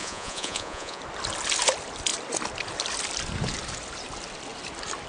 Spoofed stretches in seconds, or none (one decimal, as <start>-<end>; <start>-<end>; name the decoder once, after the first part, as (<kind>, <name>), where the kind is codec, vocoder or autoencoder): 0.0-1.0 (vocoder, Vocos)